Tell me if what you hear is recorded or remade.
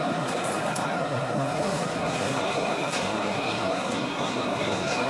remade